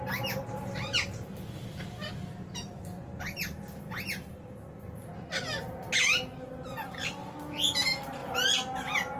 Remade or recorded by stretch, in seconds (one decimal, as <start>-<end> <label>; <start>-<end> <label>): 0.0-9.2 recorded